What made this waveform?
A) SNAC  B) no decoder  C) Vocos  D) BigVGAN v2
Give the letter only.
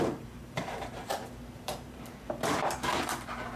D